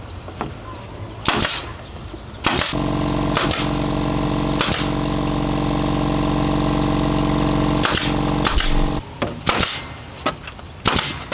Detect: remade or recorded recorded